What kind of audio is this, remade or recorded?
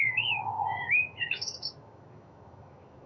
remade